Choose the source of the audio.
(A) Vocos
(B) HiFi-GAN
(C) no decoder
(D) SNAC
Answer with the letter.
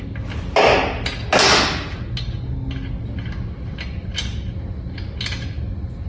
C